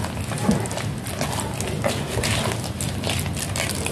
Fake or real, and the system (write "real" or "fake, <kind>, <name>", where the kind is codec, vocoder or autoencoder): real